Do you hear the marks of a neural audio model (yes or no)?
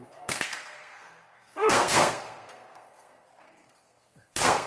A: yes